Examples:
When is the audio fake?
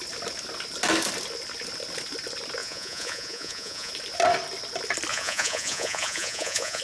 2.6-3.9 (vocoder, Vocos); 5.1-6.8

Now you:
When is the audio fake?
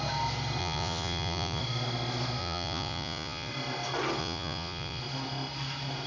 0.6-1.6 (vocoder, Vocos); 2.4-3.5; 4.2-5.0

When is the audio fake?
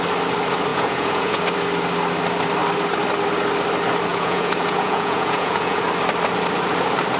0.7-1.4 (vocoder, Vocos); 4.1-5.8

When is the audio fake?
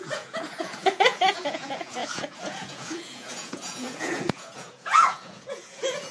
0.0-6.1 (vocoder, Vocos)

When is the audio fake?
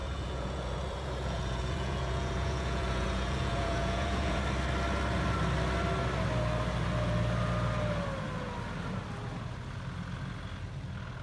0.0-4.4 (vocoder, Vocos)